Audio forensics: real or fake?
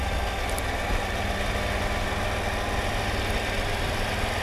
real